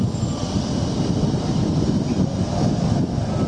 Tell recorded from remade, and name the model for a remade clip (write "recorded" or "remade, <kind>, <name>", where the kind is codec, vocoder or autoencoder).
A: recorded